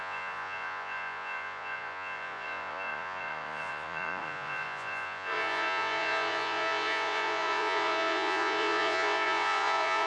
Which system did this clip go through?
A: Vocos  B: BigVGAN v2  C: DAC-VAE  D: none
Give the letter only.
A